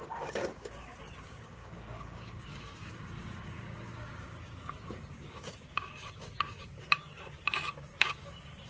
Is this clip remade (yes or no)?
yes